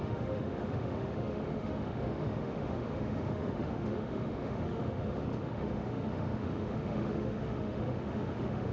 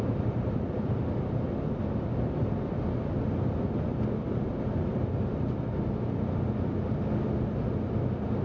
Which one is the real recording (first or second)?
second